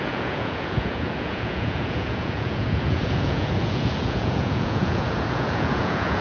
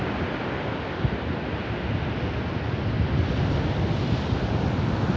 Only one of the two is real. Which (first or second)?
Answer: second